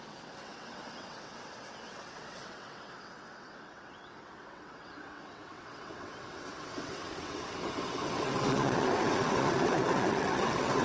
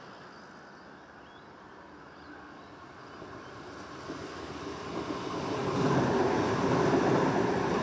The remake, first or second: first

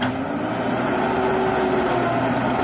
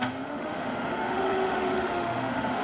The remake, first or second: second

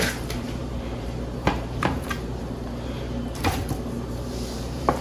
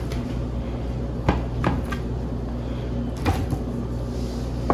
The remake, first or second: first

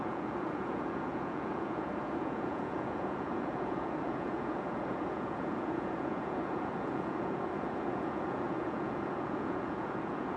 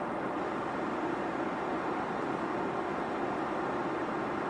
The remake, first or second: first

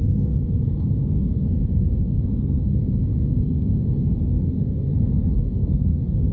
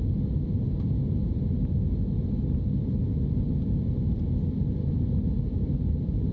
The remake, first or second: first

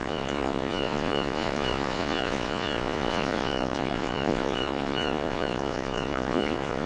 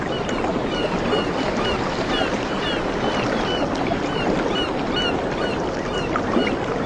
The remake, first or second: first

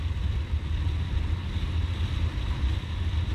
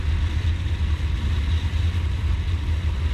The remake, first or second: first